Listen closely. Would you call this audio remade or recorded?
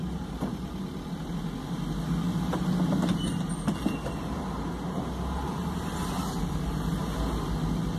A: recorded